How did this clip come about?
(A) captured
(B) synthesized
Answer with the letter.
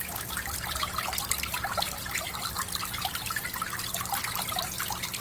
A